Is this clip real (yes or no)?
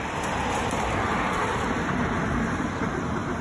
yes